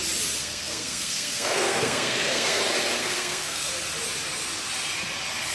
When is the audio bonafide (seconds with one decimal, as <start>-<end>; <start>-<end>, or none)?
0.0-0.4; 2.6-3.0; 3.7-5.5